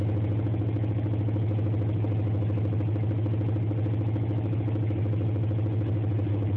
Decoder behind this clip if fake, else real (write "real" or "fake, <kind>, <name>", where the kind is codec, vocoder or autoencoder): real